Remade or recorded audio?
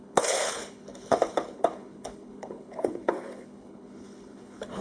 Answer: remade